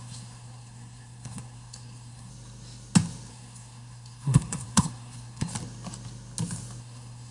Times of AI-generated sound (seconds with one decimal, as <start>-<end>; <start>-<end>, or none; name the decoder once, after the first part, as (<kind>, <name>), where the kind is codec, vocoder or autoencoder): 0.0-2.3 (codec, SNAC); 3.3-5.5; 6.8-7.3